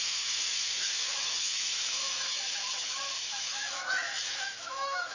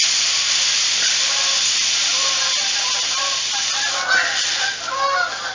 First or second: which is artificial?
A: first